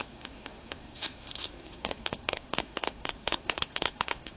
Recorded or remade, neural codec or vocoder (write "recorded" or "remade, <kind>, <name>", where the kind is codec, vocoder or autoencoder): remade, codec, SNAC